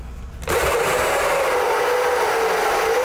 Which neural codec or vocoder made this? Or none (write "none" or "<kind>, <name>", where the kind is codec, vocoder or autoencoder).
none